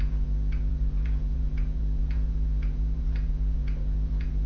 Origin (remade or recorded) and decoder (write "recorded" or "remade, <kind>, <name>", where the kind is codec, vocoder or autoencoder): remade, vocoder, Vocos